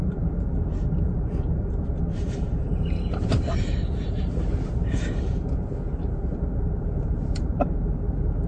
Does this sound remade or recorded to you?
remade